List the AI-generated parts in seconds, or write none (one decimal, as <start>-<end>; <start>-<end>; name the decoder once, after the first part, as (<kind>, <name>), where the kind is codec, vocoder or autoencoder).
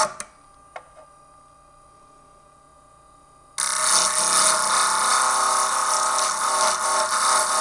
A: none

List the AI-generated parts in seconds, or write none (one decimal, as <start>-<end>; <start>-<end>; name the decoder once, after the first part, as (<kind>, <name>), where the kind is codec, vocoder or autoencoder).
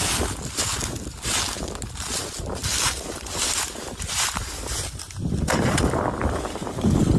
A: none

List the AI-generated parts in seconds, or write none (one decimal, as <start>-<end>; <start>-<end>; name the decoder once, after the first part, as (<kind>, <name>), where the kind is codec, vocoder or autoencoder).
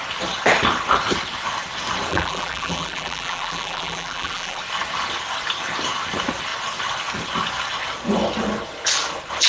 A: 2.1-4.6 (vocoder, BigVGAN v2)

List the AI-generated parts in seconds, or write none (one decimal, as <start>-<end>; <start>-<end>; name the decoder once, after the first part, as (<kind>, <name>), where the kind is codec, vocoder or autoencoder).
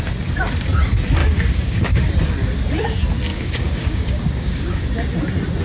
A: 1.2-2.1 (codec, DAC); 3.3-4.9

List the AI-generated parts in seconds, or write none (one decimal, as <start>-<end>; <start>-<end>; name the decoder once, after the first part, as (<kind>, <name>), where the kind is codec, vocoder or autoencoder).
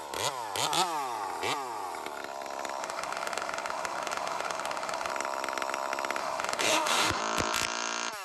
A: 2.8-5.1 (autoencoder, DAC-VAE); 6.2-7.2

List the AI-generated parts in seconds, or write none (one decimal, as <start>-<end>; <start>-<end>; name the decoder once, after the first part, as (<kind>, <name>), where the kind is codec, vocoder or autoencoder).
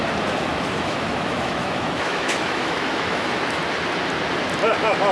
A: 0.5-3.6 (autoencoder, DAC-VAE)